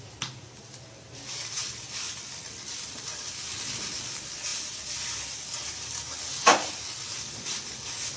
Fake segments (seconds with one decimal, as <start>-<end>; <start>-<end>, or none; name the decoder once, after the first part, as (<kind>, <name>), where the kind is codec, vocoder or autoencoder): 1.6-3.3 (vocoder, BigVGAN v2)